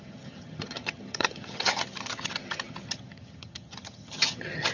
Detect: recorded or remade remade